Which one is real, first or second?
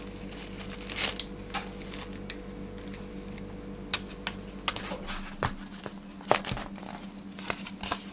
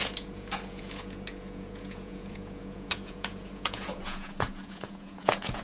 first